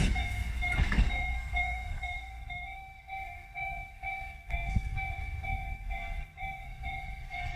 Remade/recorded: remade